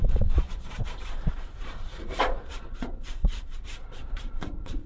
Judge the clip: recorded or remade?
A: remade